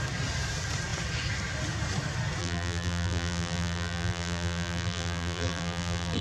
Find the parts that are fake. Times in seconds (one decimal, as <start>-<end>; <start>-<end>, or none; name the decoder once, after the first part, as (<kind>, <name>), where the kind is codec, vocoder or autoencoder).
2.4-6.2 (vocoder, BigVGAN v2)